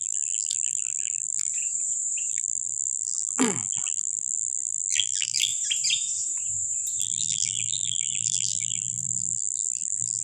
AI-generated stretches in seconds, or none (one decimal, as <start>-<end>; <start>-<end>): 0.0-1.5; 2.3-5.5; 7.0-10.2